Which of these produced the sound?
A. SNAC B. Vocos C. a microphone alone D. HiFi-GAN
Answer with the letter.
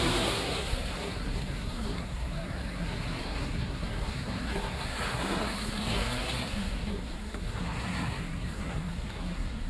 A